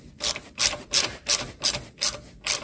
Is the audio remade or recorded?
remade